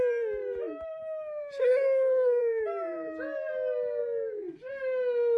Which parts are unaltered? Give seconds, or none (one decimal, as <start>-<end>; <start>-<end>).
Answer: 0.0-1.7; 3.5-5.4